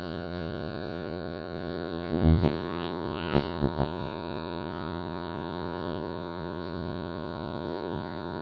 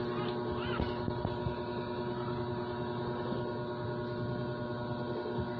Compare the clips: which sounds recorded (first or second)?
second